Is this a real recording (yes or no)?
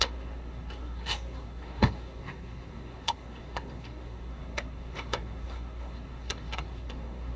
no